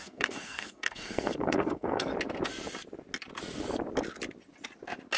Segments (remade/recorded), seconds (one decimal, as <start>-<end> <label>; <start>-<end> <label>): 0.0-2.1 remade; 2.1-5.2 recorded